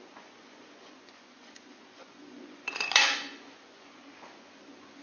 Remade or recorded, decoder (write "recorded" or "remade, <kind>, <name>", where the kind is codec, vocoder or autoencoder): remade, vocoder, Vocos